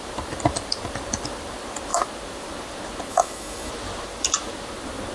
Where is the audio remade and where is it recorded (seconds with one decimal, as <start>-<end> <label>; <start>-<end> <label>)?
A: 0.0-3.1 recorded; 3.1-3.7 remade; 3.7-5.1 recorded